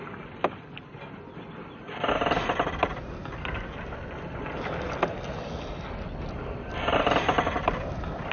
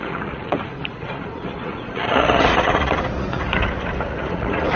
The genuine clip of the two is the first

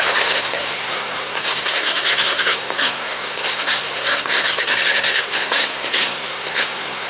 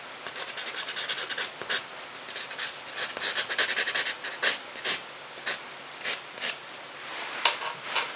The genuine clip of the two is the second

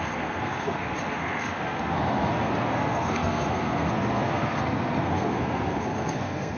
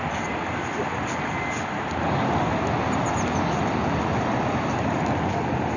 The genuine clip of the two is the second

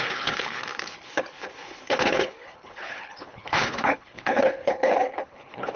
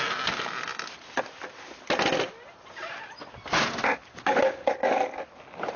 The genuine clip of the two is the second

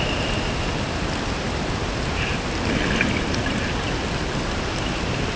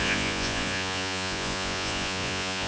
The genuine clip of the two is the first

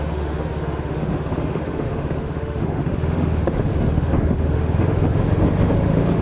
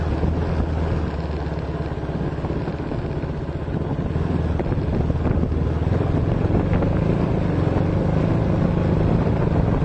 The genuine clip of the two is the second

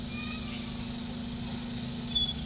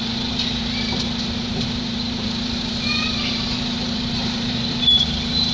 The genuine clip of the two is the first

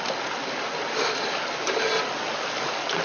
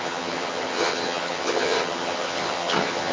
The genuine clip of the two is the first